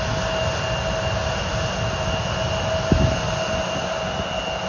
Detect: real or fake real